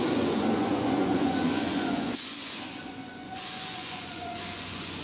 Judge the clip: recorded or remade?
remade